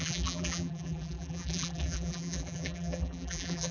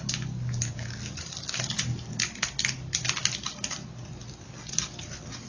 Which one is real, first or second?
second